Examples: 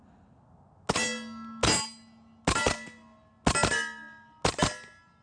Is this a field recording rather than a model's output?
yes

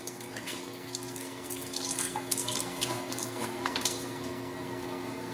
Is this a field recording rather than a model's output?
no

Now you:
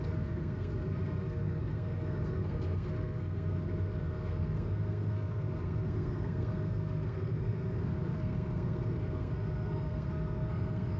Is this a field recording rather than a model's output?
no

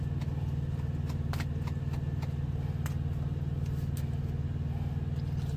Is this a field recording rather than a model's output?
yes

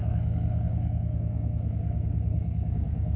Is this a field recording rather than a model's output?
no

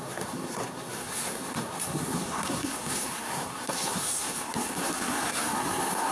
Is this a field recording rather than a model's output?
no